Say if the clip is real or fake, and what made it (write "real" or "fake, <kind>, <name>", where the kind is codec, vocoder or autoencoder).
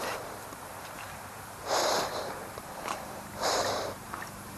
fake, vocoder, BigVGAN v2